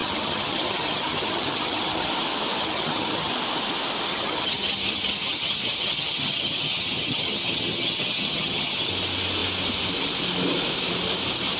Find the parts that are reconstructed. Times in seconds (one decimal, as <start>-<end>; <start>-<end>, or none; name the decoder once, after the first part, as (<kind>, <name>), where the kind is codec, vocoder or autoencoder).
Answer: 0.0-2.1 (vocoder, HiFi-GAN); 2.6-3.3; 4.1-8.9